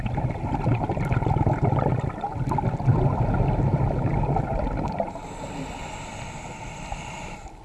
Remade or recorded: recorded